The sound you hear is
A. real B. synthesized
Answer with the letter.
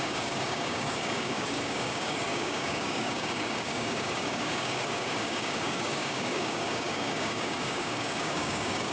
B